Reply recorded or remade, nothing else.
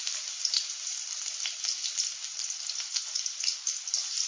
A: recorded